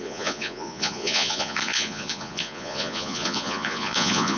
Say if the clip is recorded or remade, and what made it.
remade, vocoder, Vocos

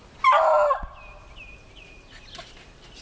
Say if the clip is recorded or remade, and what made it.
recorded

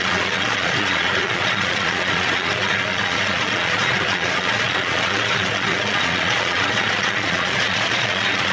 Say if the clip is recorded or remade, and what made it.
remade, vocoder, Vocos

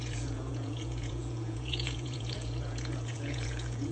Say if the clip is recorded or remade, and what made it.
remade, vocoder, Vocos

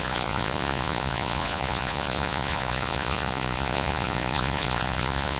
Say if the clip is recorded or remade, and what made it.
remade, vocoder, Vocos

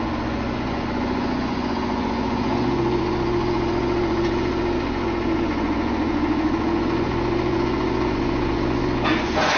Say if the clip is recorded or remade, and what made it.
remade, vocoder, Vocos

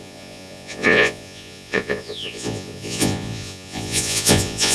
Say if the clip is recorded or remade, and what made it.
remade, vocoder, Vocos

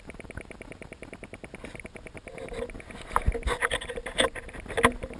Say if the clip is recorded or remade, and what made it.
recorded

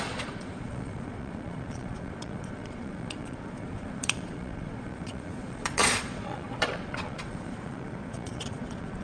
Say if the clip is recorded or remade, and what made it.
remade, vocoder, Vocos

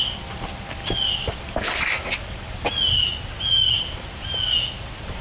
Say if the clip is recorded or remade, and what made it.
recorded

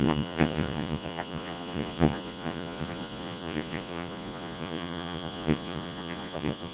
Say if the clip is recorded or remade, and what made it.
remade, vocoder, Vocos